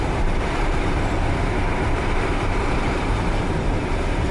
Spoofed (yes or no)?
yes